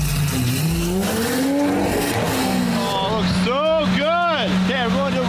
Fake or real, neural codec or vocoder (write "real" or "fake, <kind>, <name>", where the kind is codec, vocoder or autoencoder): real